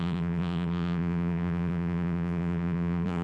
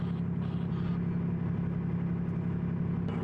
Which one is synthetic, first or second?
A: first